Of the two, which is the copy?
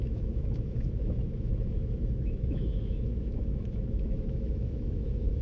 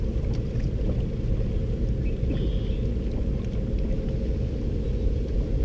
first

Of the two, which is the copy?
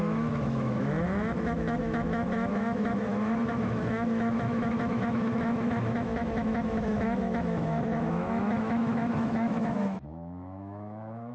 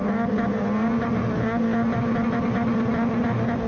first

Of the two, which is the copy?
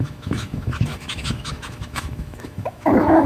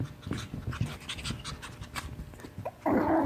first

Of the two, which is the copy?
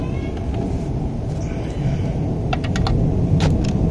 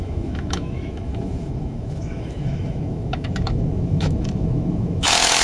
second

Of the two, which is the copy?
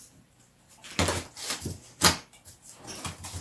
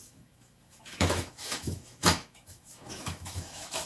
second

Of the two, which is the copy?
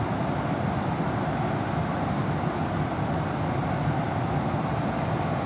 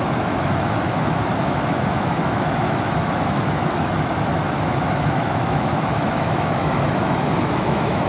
second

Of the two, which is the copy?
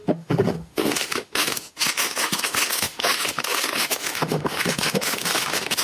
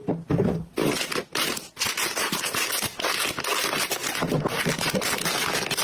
first